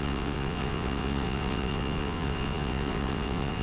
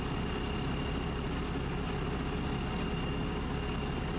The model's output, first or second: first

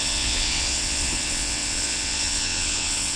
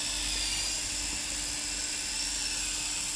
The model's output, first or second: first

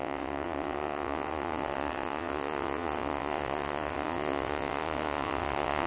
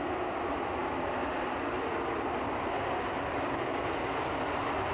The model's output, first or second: first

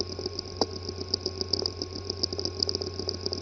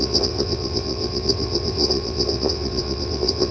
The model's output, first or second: second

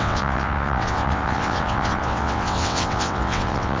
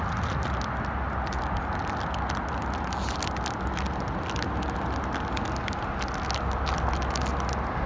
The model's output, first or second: first